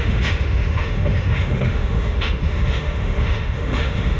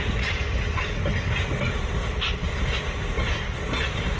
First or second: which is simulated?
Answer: first